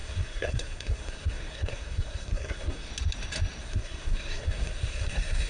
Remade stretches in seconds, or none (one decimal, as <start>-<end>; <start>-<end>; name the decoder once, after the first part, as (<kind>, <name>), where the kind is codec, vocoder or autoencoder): 0.0-2.9 (codec, SNAC); 3.6-5.5